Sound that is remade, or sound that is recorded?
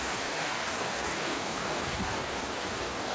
remade